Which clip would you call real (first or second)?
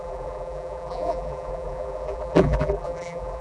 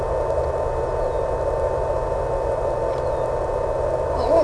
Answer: second